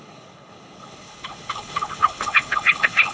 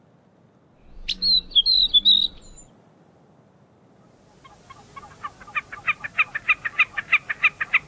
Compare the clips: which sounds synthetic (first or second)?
first